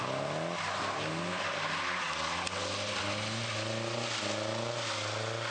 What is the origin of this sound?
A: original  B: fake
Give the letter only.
A